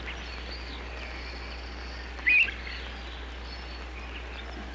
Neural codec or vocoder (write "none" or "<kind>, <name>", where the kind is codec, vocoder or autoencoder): none